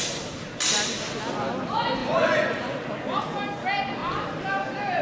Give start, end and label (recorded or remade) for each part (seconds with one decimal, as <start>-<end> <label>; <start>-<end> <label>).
0.0-2.0 recorded; 2.0-2.7 remade; 2.7-5.0 recorded